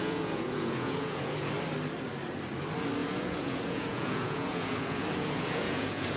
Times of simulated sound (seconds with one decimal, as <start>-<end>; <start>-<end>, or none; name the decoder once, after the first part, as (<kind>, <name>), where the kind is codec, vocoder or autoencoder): 0.0-1.5 (vocoder, Vocos); 3.0-6.2